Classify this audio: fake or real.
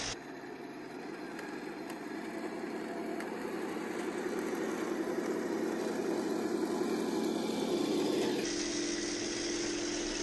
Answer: real